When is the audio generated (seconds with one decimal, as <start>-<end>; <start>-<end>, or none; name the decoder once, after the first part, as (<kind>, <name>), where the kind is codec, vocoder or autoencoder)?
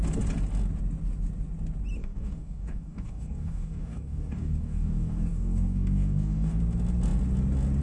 2.0-6.6 (codec, DAC)